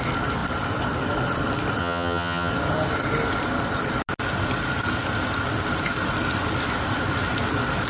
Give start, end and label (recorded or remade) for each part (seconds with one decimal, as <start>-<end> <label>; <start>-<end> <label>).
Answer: 0.0-1.8 recorded; 1.8-2.5 remade; 2.5-7.9 recorded